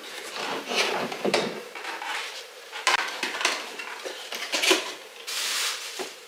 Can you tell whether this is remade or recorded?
remade